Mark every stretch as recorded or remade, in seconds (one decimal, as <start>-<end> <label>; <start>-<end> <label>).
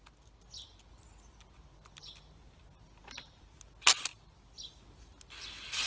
0.0-3.0 recorded; 3.0-3.6 remade; 3.6-5.9 recorded